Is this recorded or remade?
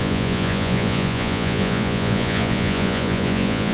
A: remade